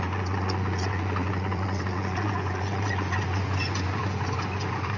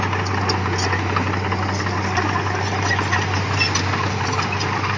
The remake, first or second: first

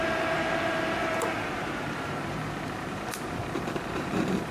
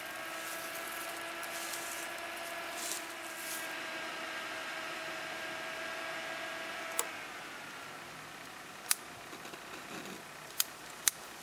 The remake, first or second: first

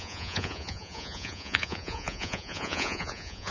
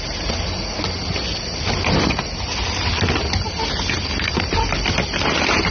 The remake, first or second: first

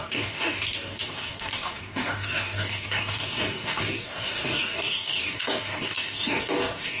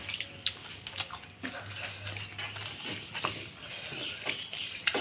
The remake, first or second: first